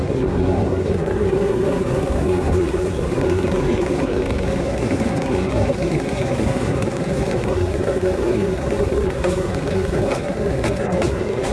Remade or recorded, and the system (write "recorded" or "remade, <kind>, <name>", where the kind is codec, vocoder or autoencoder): remade, codec, SNAC